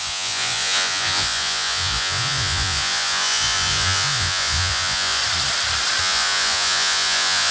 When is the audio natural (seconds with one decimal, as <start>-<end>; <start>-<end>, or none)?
5.2-6.0